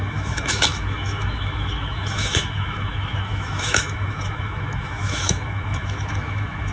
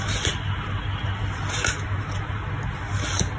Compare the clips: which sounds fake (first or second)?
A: first